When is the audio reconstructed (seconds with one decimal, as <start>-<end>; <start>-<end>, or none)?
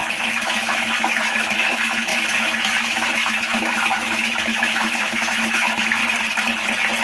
0.0-6.0